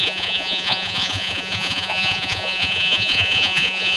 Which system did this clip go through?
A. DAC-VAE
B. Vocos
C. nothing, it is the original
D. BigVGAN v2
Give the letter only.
B